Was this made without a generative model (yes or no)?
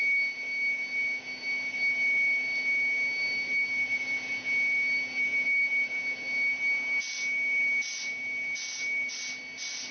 yes